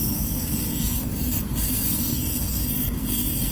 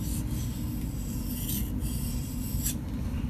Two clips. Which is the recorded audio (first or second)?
second